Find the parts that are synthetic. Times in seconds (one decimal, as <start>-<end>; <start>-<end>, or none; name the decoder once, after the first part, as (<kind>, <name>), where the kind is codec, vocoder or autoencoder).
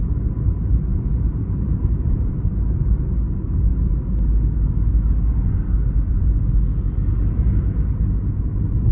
1.1-2.5 (vocoder, BigVGAN v2)